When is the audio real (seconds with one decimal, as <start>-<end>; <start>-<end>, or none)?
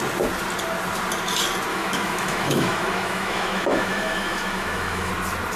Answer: 0.0-1.7; 5.1-5.6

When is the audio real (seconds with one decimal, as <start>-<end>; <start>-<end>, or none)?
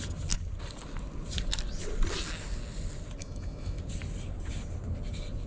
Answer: 0.0-3.2; 3.8-5.5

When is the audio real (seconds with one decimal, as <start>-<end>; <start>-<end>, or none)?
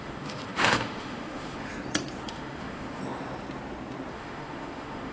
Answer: 1.7-2.2; 3.0-4.1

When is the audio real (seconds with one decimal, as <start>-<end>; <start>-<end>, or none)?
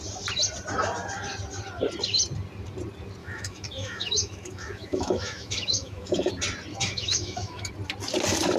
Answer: 0.0-3.2; 6.3-6.7; 7.7-8.6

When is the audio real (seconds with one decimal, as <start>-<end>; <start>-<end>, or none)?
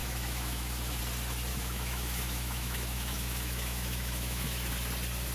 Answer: 1.0-1.5; 4.7-5.3